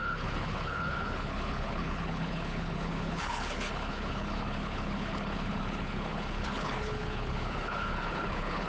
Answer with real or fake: fake